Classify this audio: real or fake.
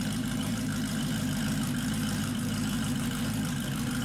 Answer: fake